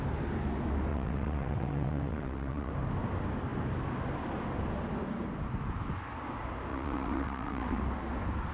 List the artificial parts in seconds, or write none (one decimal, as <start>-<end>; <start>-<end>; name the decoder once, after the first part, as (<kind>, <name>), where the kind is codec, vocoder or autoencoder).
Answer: 0.9-2.7 (vocoder, WaveNeXt); 6.7-7.8